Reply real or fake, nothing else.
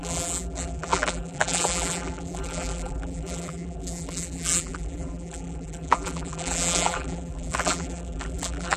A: fake